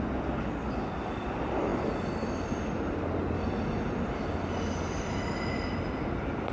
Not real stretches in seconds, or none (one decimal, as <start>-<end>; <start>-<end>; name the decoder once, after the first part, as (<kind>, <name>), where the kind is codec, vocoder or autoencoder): 1.7-5.2 (vocoder, BigVGAN v2)